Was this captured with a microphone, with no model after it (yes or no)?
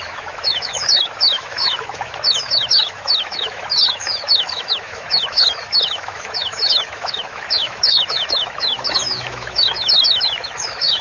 no